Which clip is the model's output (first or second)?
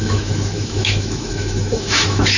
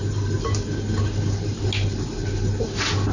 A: first